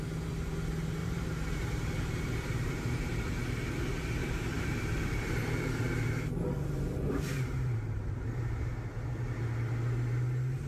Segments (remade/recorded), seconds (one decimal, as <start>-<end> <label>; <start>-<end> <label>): 0.0-1.0 recorded; 1.0-3.0 remade; 3.0-4.2 recorded; 4.2-8.7 remade; 8.7-10.7 recorded

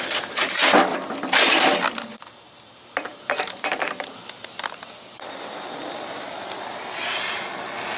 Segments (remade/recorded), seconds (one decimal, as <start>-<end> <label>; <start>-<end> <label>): 0.0-0.9 recorded; 0.9-1.8 remade; 1.8-3.1 recorded; 3.1-7.0 remade; 7.0-8.0 recorded